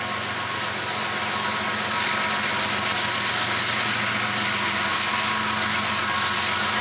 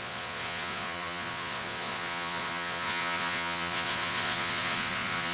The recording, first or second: first